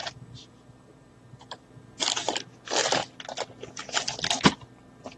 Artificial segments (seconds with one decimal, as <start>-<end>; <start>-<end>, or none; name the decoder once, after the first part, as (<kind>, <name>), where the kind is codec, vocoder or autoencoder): 0.0-1.7 (vocoder, BigVGAN v2)